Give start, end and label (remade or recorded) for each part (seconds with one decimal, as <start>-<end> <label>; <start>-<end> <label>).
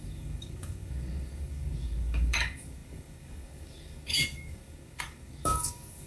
0.0-6.1 remade